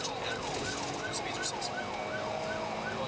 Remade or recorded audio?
recorded